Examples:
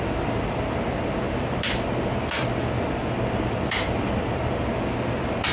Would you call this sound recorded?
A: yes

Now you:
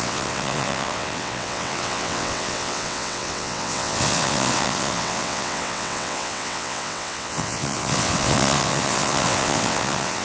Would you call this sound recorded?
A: no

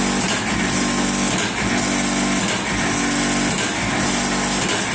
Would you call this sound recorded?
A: yes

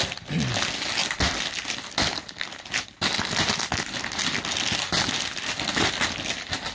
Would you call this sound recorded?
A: yes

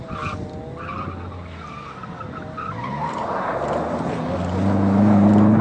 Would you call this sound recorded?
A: yes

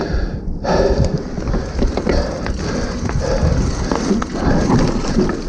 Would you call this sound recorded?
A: yes